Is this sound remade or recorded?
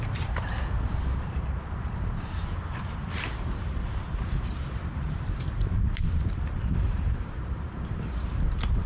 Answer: remade